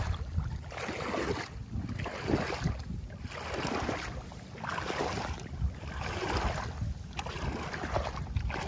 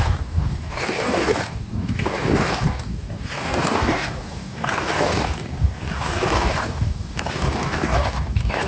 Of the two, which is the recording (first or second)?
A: first